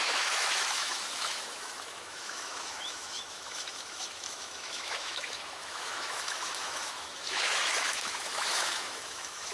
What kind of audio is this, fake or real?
fake